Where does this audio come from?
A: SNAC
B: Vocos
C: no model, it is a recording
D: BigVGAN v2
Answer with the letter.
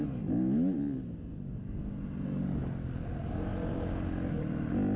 C